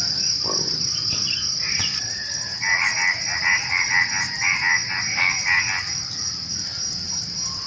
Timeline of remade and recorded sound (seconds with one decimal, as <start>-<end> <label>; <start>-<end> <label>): 0.0-7.7 recorded